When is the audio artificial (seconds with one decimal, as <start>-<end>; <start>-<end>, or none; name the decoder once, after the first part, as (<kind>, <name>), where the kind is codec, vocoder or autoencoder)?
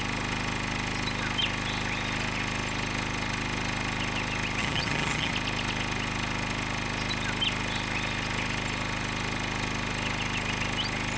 4.6-5.3 (vocoder, HiFi-GAN)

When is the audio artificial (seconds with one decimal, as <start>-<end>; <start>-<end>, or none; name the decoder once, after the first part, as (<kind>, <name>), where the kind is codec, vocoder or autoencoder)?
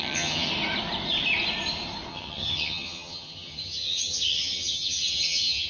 0.0-0.5 (vocoder, HiFi-GAN); 2.1-5.7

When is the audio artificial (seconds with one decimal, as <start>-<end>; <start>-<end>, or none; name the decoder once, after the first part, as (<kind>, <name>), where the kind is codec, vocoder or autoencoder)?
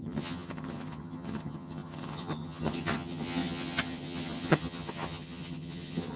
0.0-6.2 (vocoder, HiFi-GAN)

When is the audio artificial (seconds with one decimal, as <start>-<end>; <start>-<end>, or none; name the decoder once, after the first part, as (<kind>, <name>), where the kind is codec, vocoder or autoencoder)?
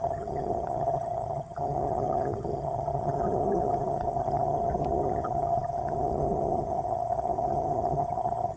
0.0-8.6 (vocoder, HiFi-GAN)